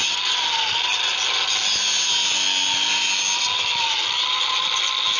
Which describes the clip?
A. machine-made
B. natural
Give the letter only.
B